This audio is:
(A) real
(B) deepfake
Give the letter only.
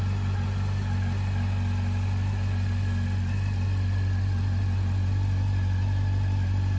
A